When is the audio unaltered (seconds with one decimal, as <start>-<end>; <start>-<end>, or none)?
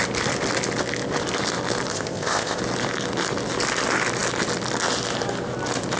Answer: 0.0-1.9; 2.6-6.0